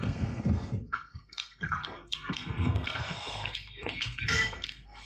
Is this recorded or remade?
remade